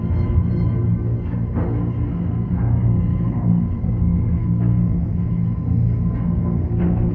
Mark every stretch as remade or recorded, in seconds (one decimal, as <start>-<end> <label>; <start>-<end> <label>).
0.0-2.1 recorded; 2.1-5.1 remade; 5.1-6.4 recorded; 6.4-7.1 remade